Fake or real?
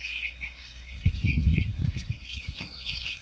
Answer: fake